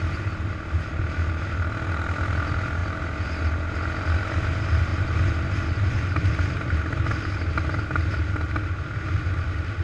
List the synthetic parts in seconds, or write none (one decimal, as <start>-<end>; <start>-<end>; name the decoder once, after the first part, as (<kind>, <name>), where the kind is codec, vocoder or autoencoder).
none